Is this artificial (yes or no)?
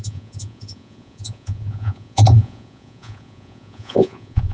yes